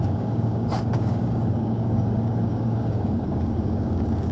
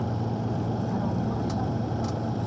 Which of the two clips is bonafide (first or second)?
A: second